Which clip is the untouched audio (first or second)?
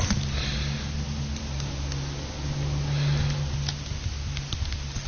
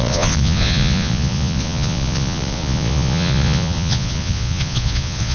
first